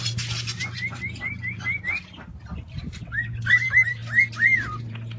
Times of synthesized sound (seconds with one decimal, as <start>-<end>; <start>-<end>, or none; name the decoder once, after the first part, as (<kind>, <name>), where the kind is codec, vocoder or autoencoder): 0.0-2.3 (vocoder, BigVGAN v2); 3.5-4.0; 4.8-5.2